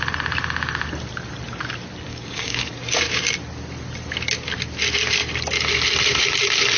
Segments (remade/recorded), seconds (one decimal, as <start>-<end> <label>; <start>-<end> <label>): 0.0-2.1 recorded; 2.1-2.7 remade; 2.7-6.8 recorded